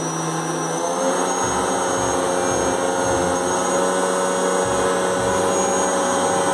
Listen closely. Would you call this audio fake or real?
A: real